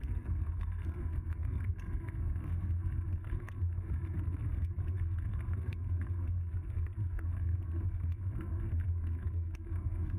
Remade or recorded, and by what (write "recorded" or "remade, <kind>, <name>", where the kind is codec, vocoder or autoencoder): remade, codec, SNAC